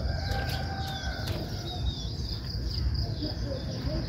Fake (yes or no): no